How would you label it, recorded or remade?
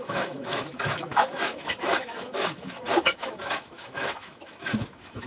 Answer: remade